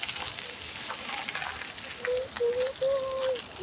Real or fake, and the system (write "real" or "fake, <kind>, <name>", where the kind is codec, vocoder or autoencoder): real